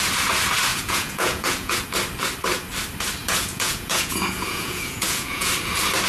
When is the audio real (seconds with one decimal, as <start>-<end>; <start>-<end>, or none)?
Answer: 0.0-0.7; 1.8-3.2; 5.5-6.1